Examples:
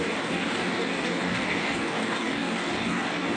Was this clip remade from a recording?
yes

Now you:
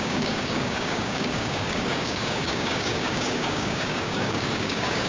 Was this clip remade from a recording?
yes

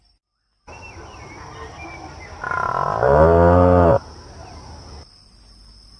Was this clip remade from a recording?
no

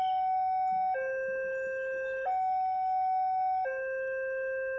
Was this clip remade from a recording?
no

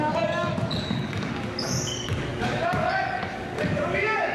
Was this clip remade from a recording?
yes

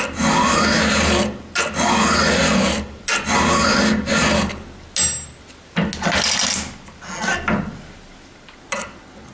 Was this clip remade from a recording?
no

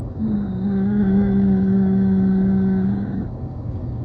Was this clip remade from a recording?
yes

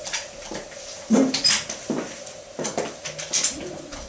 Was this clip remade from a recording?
no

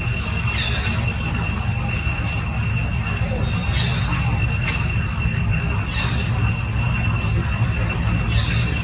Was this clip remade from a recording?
no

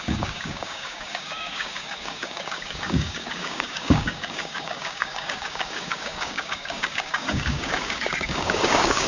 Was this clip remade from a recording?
yes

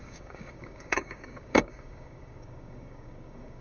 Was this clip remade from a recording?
yes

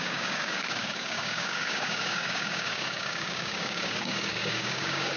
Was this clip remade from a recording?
yes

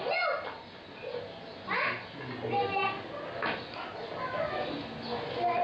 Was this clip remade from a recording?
no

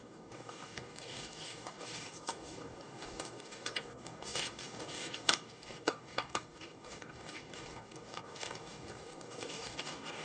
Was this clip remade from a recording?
yes